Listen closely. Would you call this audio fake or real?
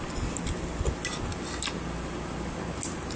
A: real